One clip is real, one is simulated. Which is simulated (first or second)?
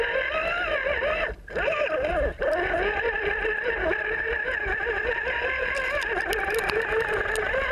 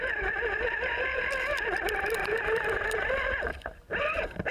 second